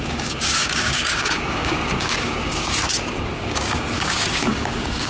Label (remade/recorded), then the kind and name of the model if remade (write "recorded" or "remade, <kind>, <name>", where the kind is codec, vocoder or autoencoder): remade, codec, DAC